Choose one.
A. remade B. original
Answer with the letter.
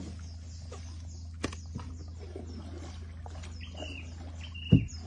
B